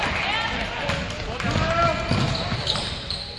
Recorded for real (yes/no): yes